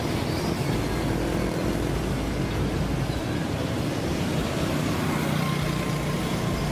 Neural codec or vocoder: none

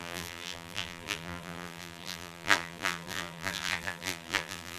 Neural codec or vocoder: vocoder, BigVGAN v2